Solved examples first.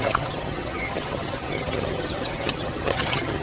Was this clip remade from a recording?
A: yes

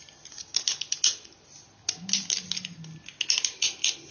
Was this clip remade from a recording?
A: no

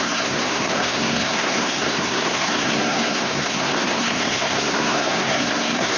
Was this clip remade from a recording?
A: yes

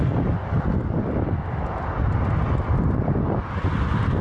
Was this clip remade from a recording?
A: no